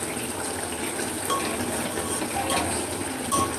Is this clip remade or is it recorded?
recorded